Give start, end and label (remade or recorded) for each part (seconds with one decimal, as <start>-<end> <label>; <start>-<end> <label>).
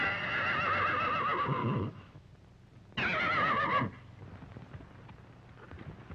0.0-1.6 recorded; 1.6-2.3 remade; 2.3-6.1 recorded